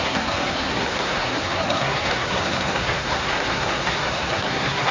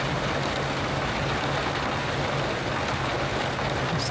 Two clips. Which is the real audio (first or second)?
second